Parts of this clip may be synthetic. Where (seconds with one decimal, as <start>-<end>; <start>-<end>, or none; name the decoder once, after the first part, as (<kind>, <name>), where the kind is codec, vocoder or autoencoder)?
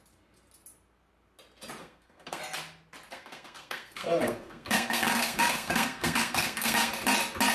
1.8-2.4 (codec, SNAC); 3.1-6.9